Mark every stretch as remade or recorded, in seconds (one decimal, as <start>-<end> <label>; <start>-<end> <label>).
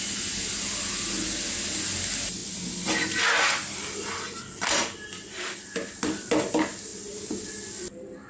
0.0-8.3 recorded